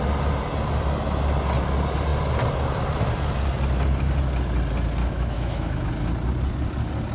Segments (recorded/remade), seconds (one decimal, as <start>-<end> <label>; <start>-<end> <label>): 0.0-5.0 recorded; 5.0-5.9 remade; 5.9-7.1 recorded